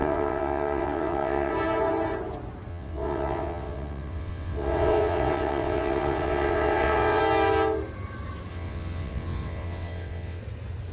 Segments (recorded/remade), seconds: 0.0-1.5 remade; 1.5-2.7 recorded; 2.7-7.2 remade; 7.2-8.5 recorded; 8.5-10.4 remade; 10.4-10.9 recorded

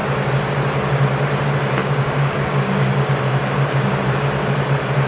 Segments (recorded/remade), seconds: 0.0-1.8 recorded; 1.8-3.1 remade; 3.1-5.1 recorded

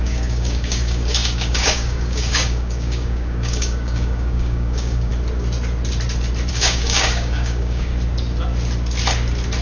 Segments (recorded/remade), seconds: 0.0-5.1 remade; 5.1-6.5 recorded; 6.5-7.9 remade; 7.9-9.6 recorded

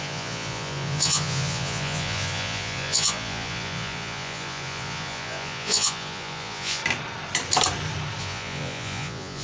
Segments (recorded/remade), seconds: 0.0-6.8 remade; 6.8-8.2 recorded; 8.2-9.4 remade

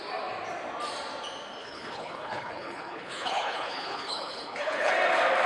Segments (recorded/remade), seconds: 0.0-1.6 recorded; 1.6-4.9 remade; 4.9-5.5 recorded

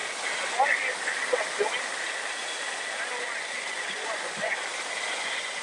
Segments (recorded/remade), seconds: 0.0-3.4 recorded; 3.4-4.5 remade; 4.5-5.1 recorded; 5.1-5.6 remade